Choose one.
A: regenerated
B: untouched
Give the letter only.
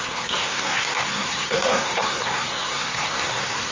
A